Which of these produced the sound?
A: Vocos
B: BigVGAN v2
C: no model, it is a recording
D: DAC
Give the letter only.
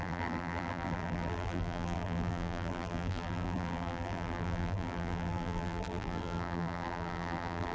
B